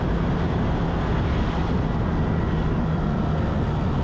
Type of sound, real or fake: real